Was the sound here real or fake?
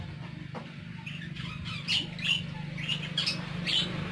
real